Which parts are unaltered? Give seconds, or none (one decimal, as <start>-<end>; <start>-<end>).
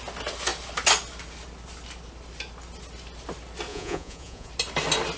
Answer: 0.0-3.7; 4.5-5.2